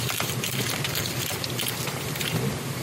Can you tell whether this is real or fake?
real